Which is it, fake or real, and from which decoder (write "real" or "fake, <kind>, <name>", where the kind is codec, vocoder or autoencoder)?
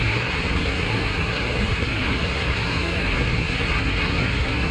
fake, codec, SNAC